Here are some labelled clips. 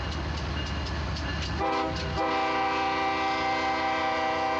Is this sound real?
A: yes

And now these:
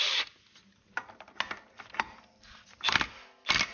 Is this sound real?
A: yes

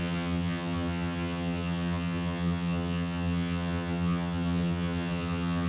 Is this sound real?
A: no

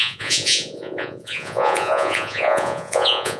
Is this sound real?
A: no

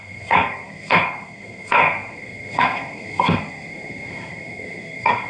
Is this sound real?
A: no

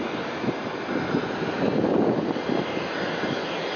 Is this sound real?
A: yes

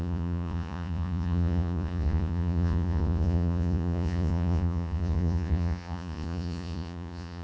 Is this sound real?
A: no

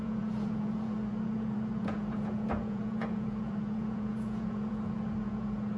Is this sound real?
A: no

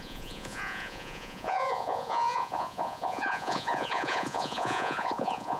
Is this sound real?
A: no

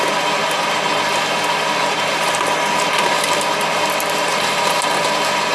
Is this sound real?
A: yes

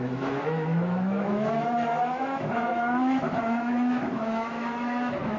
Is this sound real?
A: no